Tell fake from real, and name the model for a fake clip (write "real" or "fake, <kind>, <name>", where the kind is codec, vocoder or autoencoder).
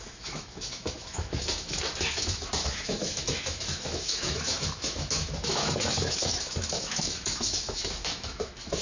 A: fake, autoencoder, DAC-VAE